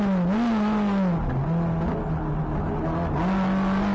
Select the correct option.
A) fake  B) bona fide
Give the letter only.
B